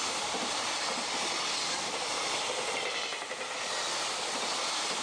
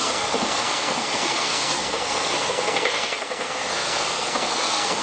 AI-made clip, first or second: second